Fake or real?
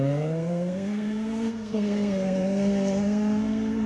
fake